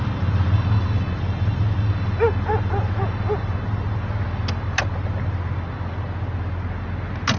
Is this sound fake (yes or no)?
no